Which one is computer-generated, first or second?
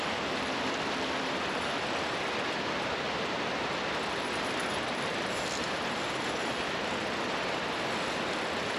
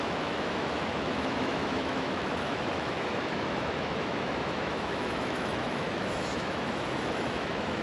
second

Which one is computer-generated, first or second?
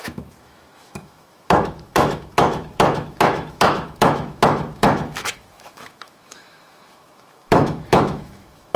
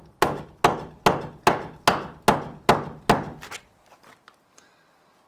first